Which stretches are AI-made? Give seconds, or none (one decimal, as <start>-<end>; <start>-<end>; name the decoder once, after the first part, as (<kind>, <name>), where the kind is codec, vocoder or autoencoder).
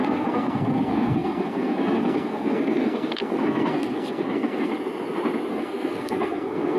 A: 0.0-4.7 (codec, SNAC); 5.5-6.8